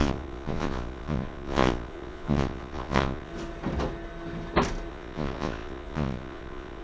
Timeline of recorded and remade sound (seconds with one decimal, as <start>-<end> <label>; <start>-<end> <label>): 0.0-3.3 remade; 3.3-4.9 recorded; 4.9-6.8 remade